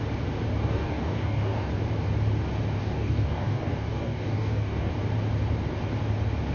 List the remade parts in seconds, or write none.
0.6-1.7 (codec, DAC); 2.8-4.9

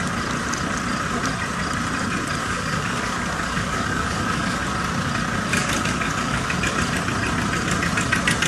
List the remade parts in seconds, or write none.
2.4-4.6 (codec, DAC); 5.5-6.6

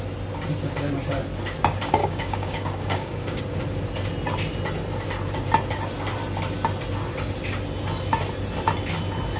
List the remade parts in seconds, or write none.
2.0-3.4 (codec, DAC)

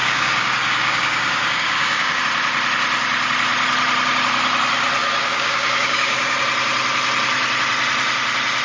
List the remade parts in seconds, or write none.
0.0-2.2 (codec, DAC); 5.0-6.4

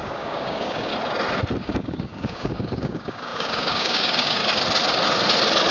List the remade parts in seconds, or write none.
0.0-0.9 (codec, DAC); 1.6-4.4

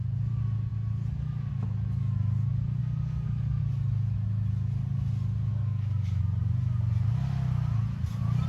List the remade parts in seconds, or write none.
2.8-3.6 (codec, DAC); 5.5-6.2

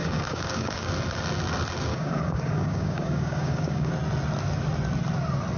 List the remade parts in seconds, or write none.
0.0-0.9 (codec, DAC); 1.9-3.9

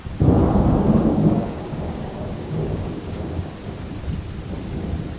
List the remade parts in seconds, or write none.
0.4-3.5 (codec, DAC)